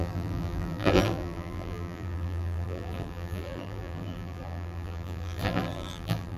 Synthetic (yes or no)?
yes